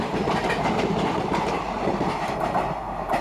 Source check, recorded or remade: remade